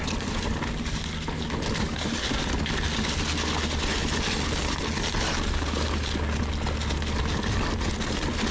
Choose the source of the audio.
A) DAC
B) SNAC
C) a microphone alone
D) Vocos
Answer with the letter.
C